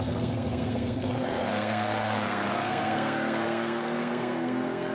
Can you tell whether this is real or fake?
fake